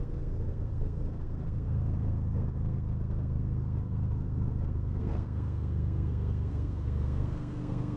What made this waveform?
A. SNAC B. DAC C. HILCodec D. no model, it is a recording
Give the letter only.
A